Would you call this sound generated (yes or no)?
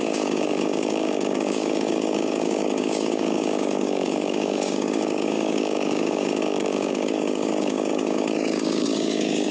yes